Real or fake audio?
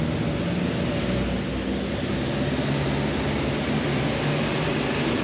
real